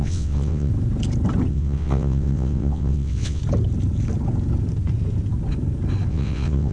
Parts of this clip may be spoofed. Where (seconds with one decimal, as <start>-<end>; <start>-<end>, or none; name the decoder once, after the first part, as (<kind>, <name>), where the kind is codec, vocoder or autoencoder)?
0.0-0.7 (vocoder, WaveNeXt); 1.5-3.4; 6.1-6.7